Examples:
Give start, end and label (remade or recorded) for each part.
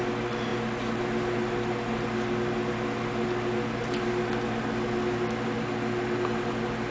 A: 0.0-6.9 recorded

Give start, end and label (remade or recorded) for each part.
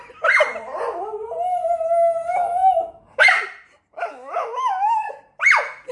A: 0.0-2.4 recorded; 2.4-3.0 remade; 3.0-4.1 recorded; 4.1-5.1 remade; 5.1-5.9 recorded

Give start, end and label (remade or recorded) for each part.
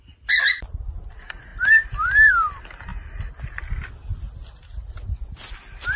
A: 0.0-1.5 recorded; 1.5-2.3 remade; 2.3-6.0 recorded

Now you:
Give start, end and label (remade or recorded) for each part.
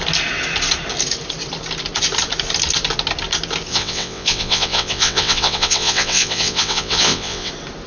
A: 0.0-3.7 recorded; 3.7-7.5 remade; 7.5-7.9 recorded